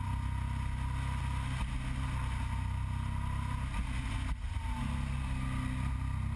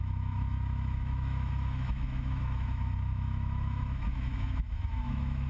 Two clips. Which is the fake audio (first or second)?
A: second